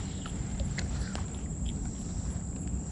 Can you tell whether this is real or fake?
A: real